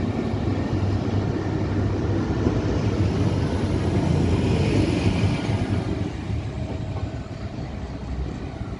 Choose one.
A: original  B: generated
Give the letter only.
A